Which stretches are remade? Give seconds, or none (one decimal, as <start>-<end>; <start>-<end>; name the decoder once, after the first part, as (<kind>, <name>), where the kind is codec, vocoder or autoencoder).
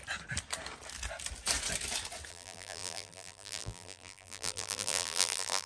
2.3-5.7 (vocoder, BigVGAN v2)